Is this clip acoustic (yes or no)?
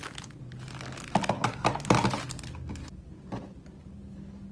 yes